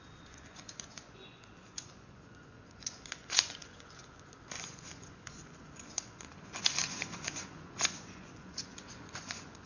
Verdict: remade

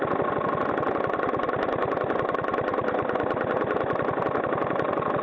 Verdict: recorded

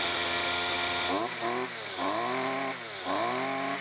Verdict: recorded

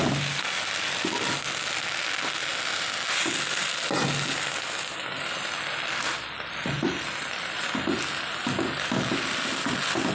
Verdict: recorded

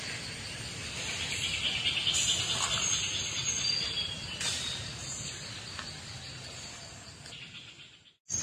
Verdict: recorded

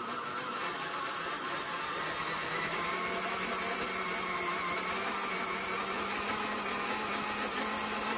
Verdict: recorded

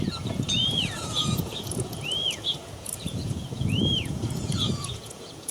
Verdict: remade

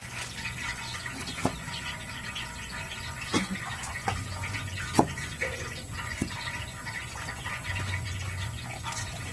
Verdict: remade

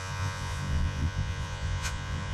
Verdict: remade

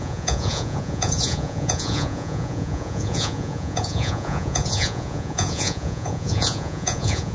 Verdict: remade